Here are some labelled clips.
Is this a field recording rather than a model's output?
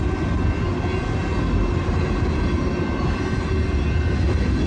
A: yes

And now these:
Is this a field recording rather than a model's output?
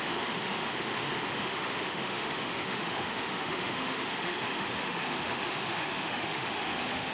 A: no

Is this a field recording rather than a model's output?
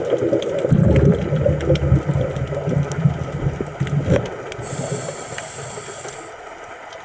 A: yes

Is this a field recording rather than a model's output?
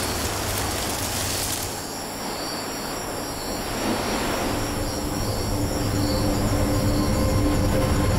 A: yes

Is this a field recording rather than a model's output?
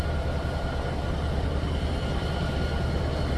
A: yes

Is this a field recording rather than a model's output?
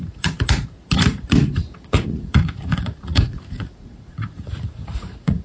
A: no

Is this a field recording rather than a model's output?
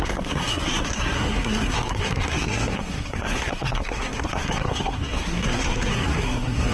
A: no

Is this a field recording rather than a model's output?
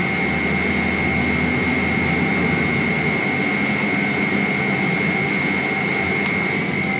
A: yes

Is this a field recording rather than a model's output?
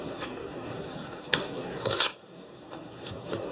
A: no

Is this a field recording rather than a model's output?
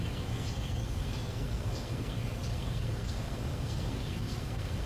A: no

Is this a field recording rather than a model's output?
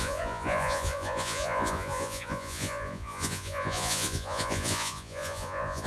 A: no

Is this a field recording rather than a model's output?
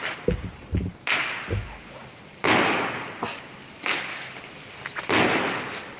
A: yes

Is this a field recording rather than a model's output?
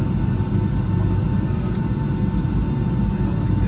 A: yes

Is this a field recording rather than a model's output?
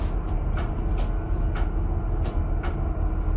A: yes